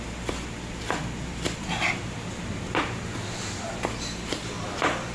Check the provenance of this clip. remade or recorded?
remade